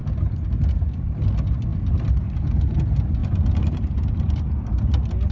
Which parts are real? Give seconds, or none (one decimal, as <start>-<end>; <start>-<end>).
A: 0.0-3.2; 4.4-5.3